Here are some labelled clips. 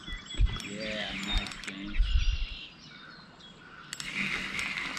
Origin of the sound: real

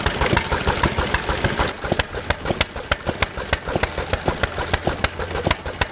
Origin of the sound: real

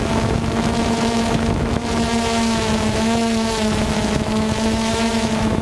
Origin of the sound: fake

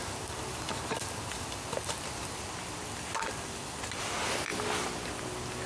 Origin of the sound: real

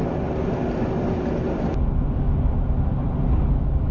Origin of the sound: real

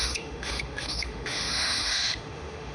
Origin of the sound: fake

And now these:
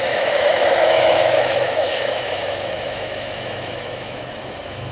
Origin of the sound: fake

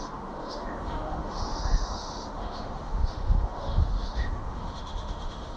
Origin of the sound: fake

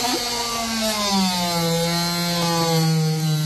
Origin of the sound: real